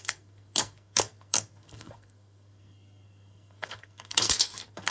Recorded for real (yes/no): no